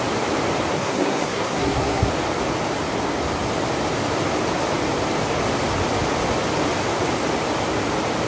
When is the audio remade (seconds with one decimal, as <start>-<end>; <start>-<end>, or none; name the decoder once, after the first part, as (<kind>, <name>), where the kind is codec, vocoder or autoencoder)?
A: 0.7-2.1 (codec, SNAC)

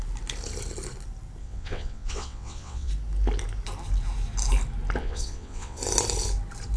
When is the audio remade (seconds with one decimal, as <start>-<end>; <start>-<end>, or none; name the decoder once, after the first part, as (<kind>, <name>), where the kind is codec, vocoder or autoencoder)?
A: 1.4-2.9 (vocoder, WaveNeXt); 5.0-5.8

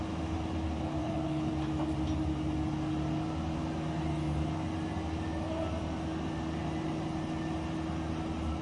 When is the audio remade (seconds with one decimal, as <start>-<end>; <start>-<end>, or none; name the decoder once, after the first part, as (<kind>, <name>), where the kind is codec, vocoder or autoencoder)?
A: 1.0-1.5 (codec, HILCodec)

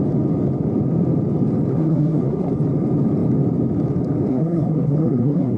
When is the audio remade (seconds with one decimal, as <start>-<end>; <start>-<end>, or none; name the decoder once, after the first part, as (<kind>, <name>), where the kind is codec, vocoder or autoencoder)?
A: 1.7-2.5 (codec, SNAC); 4.3-5.6

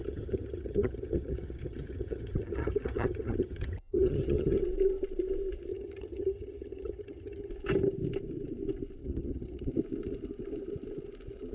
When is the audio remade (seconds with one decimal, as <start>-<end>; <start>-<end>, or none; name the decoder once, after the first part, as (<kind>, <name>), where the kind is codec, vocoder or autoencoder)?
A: 0.0-4.6 (vocoder, HiFi-GAN); 5.7-7.5; 9.0-9.7

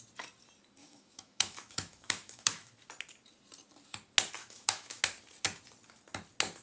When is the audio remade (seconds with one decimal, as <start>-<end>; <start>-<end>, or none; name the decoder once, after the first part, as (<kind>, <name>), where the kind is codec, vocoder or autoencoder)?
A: 0.8-2.7 (autoencoder, DAC-VAE); 4.4-5.0

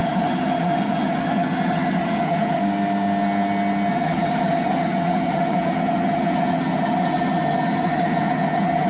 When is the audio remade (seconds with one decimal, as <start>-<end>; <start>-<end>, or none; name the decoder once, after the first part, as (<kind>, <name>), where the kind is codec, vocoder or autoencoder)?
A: 0.0-2.6 (vocoder, HiFi-GAN); 3.9-8.9

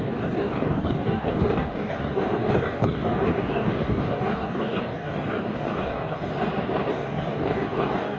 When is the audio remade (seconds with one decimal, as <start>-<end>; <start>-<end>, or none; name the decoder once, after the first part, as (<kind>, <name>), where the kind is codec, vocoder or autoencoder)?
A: 0.0-6.3 (codec, DAC); 6.9-8.2